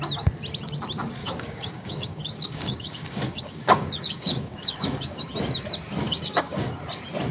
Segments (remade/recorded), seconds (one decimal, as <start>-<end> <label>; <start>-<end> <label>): 0.0-1.2 recorded; 1.2-5.3 remade; 5.3-6.0 recorded; 6.0-6.7 remade; 6.7-7.3 recorded